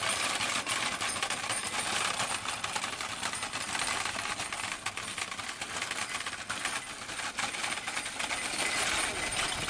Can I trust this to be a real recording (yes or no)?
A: yes